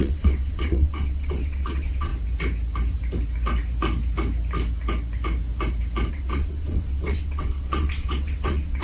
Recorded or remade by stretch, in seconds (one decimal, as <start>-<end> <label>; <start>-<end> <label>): 0.0-2.1 remade; 2.1-6.1 recorded; 6.1-8.8 remade